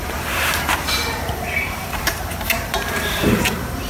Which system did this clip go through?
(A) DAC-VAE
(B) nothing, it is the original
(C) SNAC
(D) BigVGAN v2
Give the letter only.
D